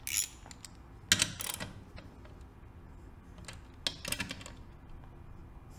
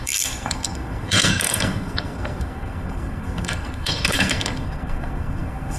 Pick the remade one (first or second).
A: second